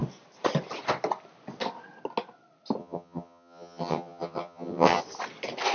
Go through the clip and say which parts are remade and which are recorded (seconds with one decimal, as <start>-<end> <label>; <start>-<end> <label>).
0.0-2.8 recorded; 2.8-5.0 remade; 5.0-5.7 recorded